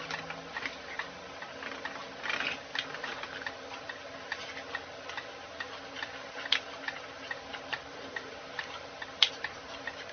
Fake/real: real